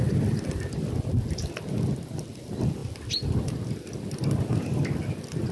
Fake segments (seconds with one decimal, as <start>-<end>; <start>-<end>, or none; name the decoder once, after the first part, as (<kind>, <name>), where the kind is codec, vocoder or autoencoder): none